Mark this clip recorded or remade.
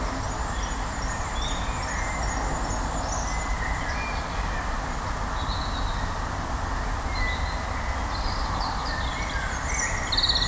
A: recorded